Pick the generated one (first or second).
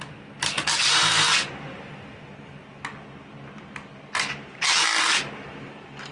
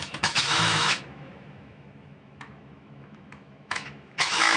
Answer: second